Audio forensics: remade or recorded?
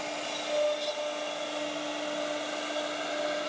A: recorded